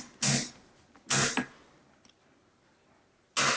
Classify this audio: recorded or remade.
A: recorded